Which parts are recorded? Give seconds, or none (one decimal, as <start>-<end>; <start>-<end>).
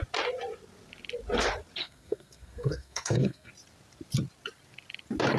0.0-1.8; 3.5-5.4